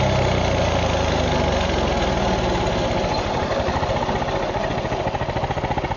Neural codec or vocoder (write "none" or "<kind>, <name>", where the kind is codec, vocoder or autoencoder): none